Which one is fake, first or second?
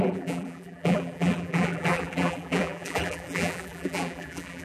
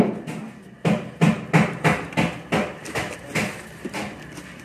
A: first